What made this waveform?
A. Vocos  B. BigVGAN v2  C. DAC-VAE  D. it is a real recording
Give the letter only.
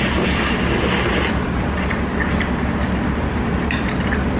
D